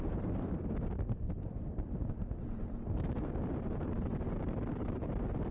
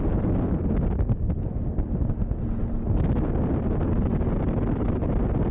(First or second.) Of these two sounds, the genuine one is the second